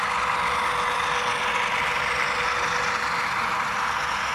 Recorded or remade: recorded